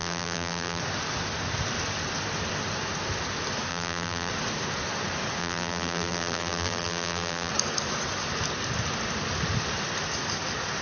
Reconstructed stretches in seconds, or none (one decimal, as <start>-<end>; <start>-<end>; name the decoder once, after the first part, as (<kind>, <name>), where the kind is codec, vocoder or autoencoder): 0.0-0.8 (vocoder, BigVGAN v2); 3.7-4.3; 5.4-7.5